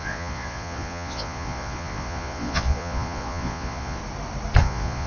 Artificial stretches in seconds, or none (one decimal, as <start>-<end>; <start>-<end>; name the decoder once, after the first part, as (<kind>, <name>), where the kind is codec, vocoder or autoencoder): 0.0-4.0 (vocoder, Vocos); 4.6-5.1